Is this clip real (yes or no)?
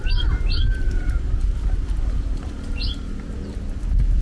yes